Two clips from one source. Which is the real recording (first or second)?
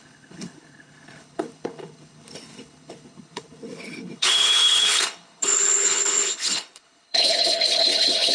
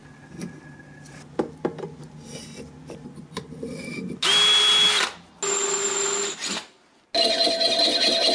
second